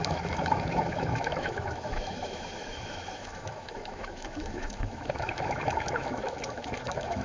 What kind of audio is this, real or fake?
fake